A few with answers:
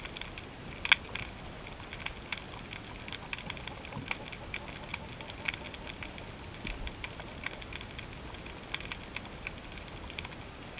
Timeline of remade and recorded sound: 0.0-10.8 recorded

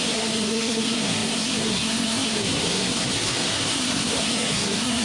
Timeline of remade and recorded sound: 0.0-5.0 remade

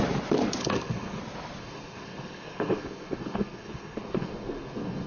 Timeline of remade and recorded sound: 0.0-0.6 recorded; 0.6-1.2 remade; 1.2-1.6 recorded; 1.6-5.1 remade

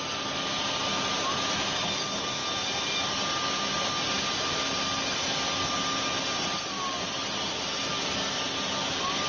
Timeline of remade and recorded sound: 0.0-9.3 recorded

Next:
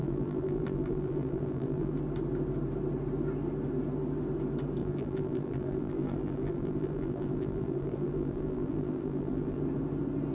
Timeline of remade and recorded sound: 0.0-1.9 remade; 1.9-4.8 recorded; 4.8-9.6 remade; 9.6-10.3 recorded